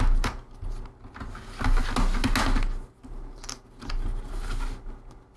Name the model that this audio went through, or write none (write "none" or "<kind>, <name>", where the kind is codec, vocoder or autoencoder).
none